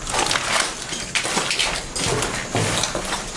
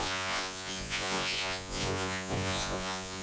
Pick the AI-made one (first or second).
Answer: second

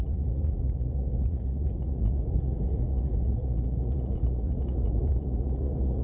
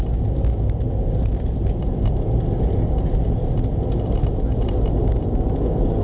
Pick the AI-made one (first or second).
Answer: first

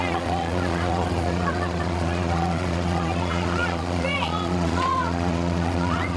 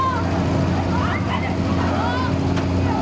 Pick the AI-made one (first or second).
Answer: first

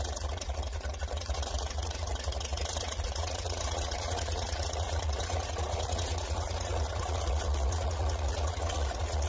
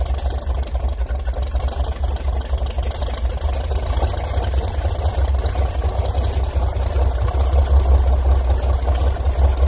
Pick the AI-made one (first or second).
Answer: first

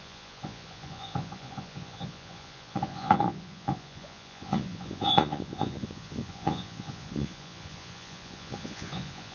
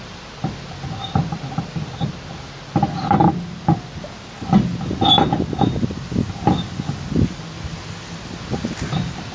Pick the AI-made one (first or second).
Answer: first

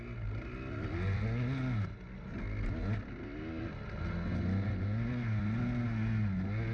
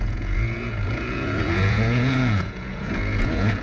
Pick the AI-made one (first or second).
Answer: second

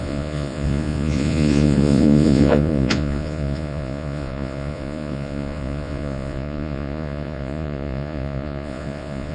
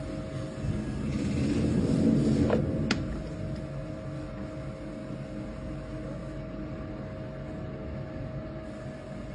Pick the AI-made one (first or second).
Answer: first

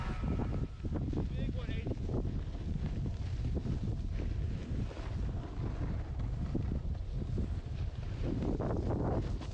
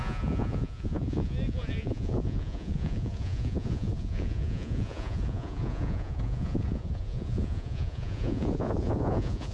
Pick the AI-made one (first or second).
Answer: second